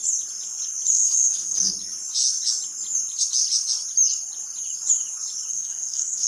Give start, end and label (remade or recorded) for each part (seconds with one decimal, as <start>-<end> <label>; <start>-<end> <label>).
0.0-0.9 recorded; 0.9-1.7 remade; 1.7-5.5 recorded; 5.5-6.3 remade